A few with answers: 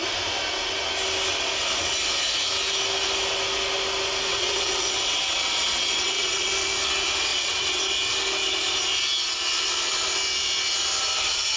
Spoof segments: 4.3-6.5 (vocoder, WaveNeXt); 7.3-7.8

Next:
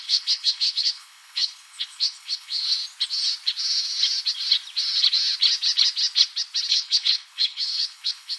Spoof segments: 0.0-2.7 (codec, HILCodec); 6.7-8.4

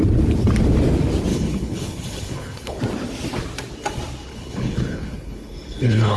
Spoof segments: 1.3-2.8 (codec, HILCodec); 4.3-6.2

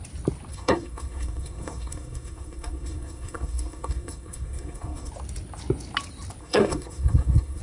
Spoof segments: 0.5-5.1 (codec, SNAC); 6.4-7.6

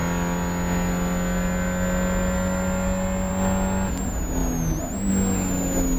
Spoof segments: none

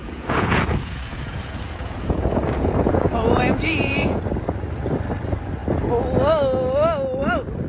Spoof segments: 0.0-4.2 (vocoder, Vocos)

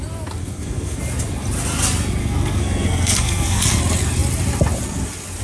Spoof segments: 0.4-1.0 (codec, SNAC); 2.2-3.8